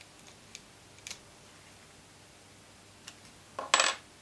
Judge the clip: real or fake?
real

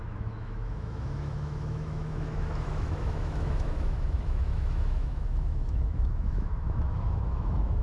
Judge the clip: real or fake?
fake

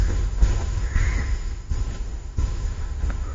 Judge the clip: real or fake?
fake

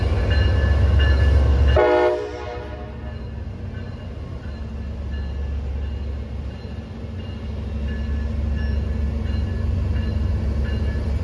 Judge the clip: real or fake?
real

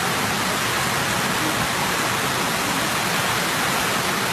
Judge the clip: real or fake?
real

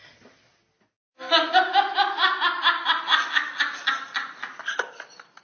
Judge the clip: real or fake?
real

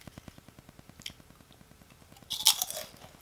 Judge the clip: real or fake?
real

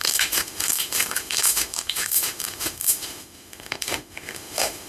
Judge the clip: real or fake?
fake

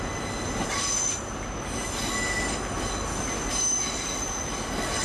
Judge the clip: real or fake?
real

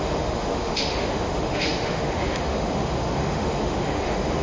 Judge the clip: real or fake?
fake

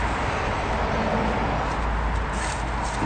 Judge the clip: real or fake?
real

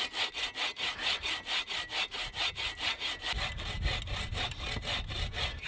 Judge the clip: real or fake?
real